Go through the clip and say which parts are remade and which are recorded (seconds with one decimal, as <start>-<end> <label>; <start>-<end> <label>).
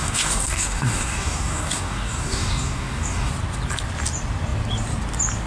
0.0-3.3 remade; 3.3-5.5 recorded